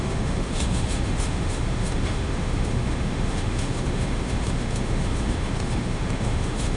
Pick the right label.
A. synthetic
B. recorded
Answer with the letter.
A